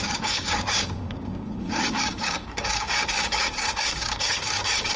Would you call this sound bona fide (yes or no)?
no